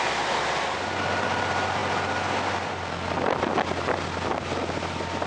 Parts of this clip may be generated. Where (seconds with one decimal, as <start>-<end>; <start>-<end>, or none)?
none